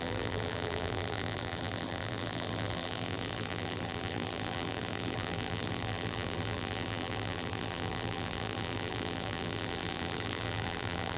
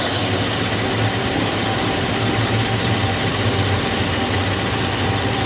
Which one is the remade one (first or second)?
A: first